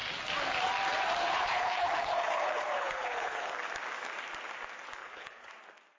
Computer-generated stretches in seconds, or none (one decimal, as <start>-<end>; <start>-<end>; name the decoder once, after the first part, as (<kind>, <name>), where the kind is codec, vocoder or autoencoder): 1.2-3.5 (codec, HILCodec); 5.0-5.5